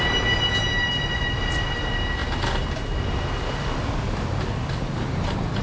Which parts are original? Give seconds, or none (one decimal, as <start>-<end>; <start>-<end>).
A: 0.0-5.6